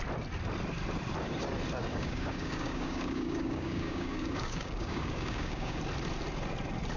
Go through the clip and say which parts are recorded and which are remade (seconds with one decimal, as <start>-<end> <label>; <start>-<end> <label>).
0.0-1.9 recorded; 1.9-5.8 remade; 5.8-7.0 recorded